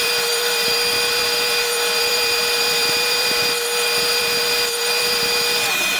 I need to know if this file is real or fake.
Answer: fake